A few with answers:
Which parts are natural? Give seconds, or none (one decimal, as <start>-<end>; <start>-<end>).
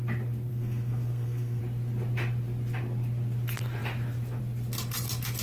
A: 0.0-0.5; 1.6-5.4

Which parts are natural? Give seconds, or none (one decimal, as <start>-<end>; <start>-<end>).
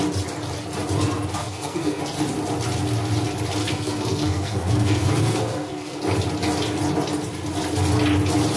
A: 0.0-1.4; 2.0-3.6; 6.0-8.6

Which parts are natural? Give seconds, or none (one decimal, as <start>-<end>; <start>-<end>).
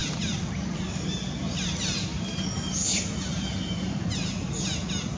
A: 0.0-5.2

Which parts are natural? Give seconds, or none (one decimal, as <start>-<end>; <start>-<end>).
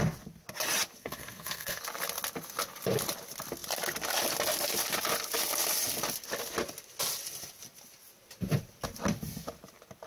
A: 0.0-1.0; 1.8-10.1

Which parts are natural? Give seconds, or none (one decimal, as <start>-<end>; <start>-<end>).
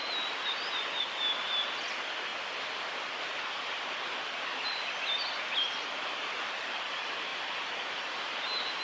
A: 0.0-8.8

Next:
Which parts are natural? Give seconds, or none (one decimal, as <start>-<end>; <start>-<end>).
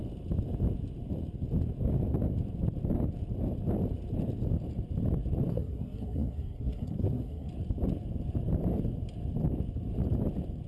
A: 0.0-5.5; 7.5-10.7